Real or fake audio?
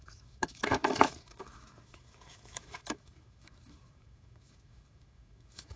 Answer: fake